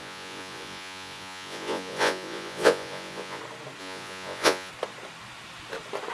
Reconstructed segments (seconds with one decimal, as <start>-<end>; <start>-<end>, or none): 0.0-3.4; 3.8-4.7